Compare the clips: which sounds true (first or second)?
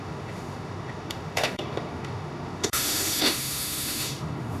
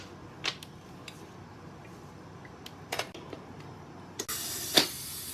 second